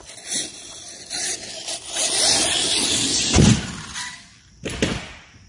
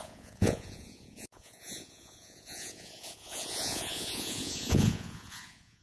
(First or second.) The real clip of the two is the first